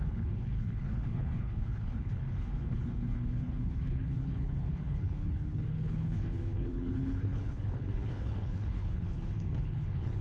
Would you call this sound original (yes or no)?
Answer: no